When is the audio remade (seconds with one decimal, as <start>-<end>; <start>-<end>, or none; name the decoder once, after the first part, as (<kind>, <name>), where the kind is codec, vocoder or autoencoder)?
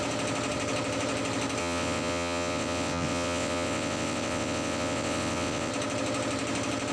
1.6-5.7 (vocoder, WaveNeXt)